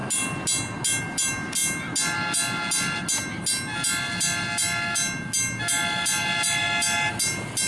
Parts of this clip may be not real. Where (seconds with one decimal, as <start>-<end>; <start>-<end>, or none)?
none